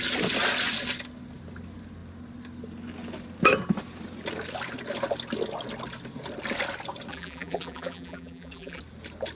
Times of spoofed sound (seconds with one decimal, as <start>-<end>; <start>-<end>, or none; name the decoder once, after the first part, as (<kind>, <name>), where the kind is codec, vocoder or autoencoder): 7.1-8.8 (vocoder, BigVGAN v2)